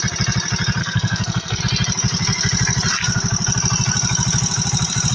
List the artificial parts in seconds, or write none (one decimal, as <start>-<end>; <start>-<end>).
0.8-1.6